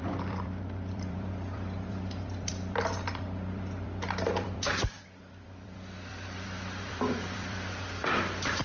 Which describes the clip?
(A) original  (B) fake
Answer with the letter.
B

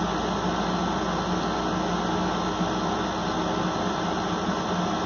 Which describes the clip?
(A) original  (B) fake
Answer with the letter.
A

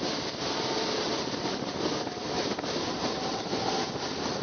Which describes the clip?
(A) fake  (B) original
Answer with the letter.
A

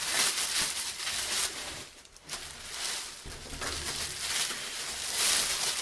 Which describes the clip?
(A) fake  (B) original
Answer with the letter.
B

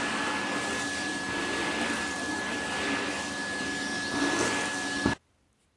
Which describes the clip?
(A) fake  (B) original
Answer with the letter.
B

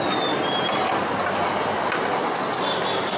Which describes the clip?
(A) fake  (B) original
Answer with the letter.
B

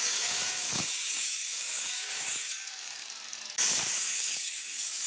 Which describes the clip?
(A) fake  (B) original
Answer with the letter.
A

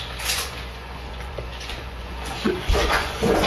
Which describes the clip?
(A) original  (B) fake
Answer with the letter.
B